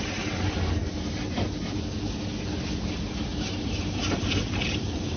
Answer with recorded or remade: recorded